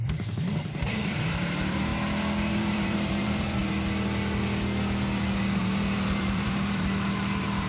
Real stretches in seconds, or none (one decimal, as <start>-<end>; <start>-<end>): 1.9-2.5; 3.6-5.6